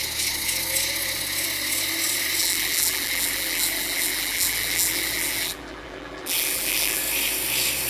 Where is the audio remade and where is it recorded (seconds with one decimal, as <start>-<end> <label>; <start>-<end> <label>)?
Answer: 0.0-2.4 recorded; 2.4-7.0 remade; 7.0-7.9 recorded

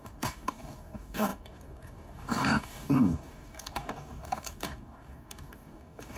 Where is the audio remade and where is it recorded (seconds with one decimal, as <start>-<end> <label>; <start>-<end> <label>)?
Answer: 0.0-6.2 remade

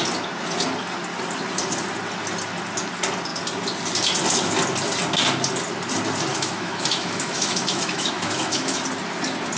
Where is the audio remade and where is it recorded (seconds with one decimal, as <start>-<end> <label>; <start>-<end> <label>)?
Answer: 0.0-6.3 recorded; 6.3-8.8 remade; 8.8-9.6 recorded

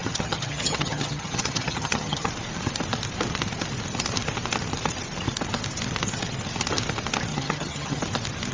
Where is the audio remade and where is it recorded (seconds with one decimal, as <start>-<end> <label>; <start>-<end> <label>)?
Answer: 0.0-2.3 remade; 2.3-7.3 recorded; 7.3-8.0 remade; 8.0-8.5 recorded